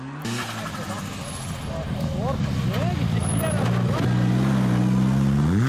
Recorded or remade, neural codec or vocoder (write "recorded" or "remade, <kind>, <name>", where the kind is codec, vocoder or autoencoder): recorded